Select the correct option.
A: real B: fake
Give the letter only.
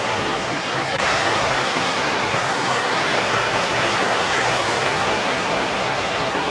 B